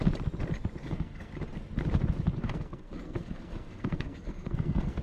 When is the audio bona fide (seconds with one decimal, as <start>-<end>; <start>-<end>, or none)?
0.0-0.8; 1.3-2.4